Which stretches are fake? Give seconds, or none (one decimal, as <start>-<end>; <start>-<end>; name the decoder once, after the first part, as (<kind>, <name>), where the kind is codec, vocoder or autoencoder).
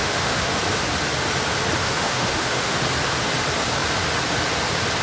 0.0-0.6 (autoencoder, DAC-VAE); 1.8-2.8